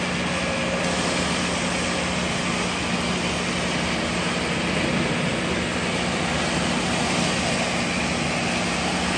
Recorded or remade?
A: recorded